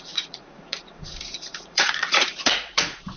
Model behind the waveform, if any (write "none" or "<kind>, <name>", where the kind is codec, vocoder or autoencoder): vocoder, Vocos